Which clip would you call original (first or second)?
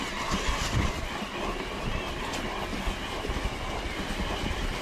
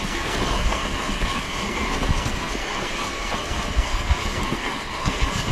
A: first